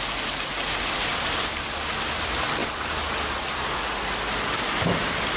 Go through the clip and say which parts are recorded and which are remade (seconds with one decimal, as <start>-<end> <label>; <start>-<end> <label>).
0.0-5.4 recorded